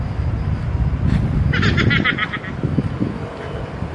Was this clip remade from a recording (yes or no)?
no